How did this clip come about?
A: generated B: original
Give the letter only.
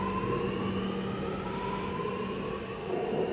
B